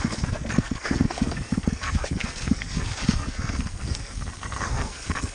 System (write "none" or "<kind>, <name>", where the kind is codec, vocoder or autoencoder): codec, SNAC